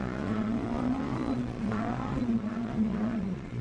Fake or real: fake